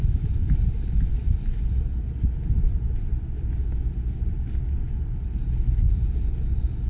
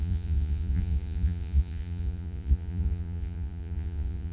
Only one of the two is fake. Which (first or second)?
second